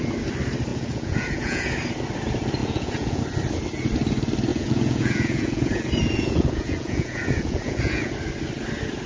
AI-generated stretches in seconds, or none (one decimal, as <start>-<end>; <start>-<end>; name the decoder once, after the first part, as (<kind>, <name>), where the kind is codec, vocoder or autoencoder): 0.7-1.7 (vocoder, Vocos); 2.6-3.2; 4.5-8.1